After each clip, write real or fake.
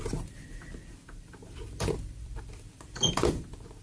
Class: fake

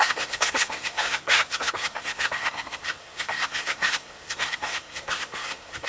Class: fake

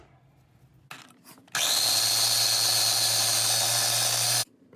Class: real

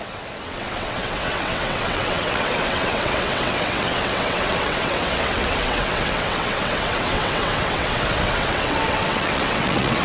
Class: fake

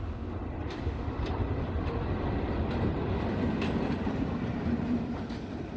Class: fake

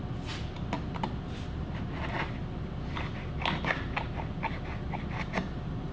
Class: real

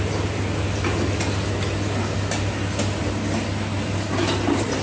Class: real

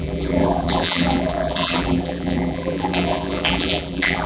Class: fake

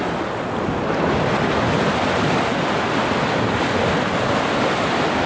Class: real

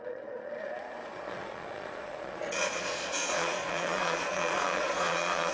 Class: fake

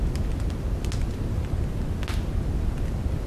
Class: real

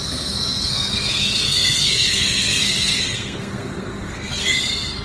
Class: fake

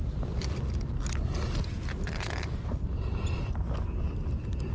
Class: real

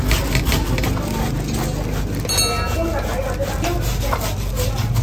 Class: real